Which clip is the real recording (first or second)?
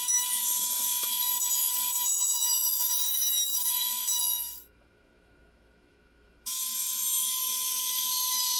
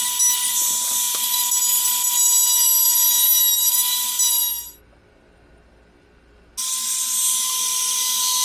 second